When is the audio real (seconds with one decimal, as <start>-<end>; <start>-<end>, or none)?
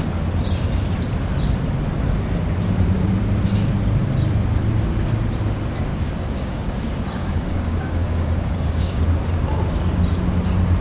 0.0-5.9; 6.7-7.2; 9.0-10.8